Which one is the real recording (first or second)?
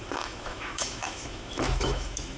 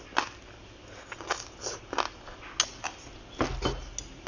second